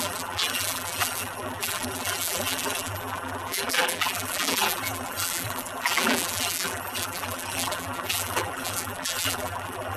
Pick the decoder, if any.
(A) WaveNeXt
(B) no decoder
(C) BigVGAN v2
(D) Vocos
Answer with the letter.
C